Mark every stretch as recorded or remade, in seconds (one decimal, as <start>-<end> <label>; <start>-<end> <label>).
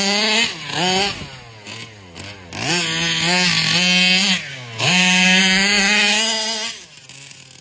0.0-4.5 recorded; 4.5-5.4 remade; 5.4-7.6 recorded